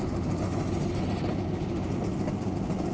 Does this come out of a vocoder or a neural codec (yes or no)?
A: no